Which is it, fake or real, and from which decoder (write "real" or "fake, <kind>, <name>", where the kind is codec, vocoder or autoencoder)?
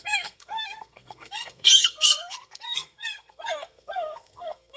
fake, codec, SNAC